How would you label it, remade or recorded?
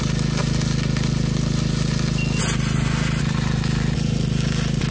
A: recorded